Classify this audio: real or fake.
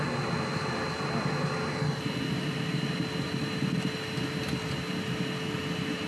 real